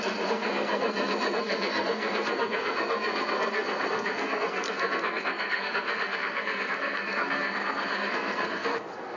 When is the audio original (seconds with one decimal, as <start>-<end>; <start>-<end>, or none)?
none